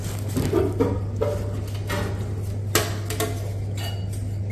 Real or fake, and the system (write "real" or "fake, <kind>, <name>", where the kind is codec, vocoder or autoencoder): real